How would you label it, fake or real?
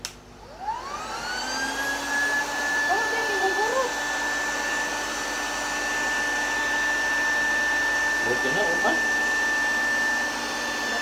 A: real